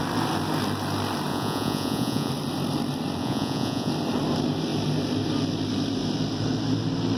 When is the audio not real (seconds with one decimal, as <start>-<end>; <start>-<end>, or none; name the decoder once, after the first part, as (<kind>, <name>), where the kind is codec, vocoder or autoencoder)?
1.3-2.3 (vocoder, Vocos); 3.2-3.9